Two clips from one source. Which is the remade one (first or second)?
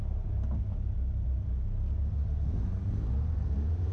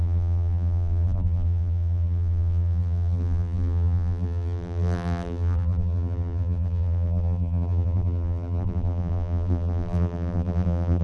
second